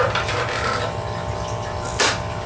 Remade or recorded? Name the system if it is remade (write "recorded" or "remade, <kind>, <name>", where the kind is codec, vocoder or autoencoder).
recorded